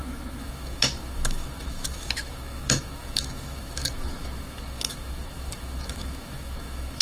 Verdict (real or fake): fake